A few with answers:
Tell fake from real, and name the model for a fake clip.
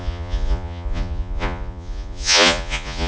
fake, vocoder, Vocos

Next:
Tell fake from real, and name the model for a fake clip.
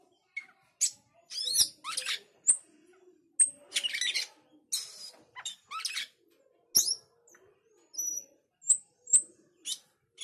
real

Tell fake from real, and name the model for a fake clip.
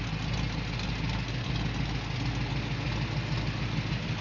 real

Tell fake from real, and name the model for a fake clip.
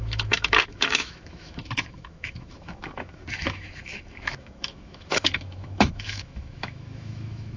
fake, autoencoder, DAC-VAE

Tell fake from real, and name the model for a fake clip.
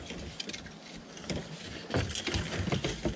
real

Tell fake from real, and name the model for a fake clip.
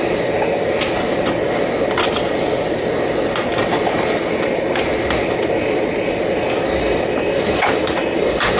real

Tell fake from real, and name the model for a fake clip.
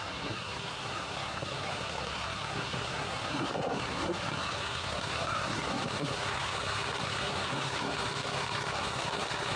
fake, codec, SNAC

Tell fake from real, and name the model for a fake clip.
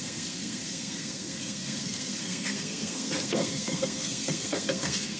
fake, codec, SNAC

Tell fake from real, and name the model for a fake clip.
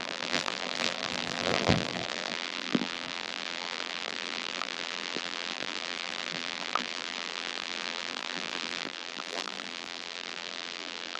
fake, vocoder, BigVGAN v2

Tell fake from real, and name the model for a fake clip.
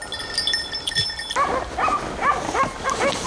real